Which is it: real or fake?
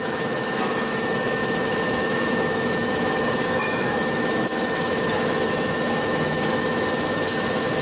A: fake